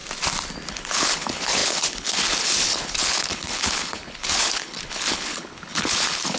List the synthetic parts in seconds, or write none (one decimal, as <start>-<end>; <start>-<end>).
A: 0.7-6.4